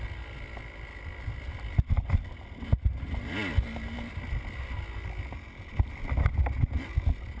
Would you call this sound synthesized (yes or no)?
no